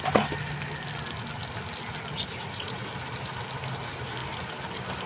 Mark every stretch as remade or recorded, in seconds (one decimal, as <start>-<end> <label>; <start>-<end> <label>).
0.0-2.3 recorded; 2.3-2.9 remade; 2.9-5.1 recorded